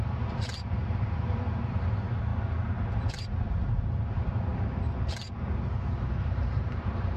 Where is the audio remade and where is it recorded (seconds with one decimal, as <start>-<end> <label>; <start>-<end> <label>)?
0.0-2.3 remade; 2.3-3.1 recorded; 3.1-4.5 remade; 4.5-6.2 recorded; 6.2-7.2 remade